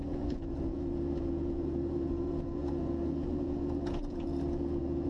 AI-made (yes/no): yes